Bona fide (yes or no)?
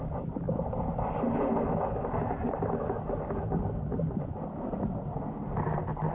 yes